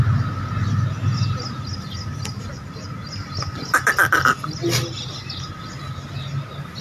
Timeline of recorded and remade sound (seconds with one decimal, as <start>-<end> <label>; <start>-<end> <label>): 0.0-6.8 recorded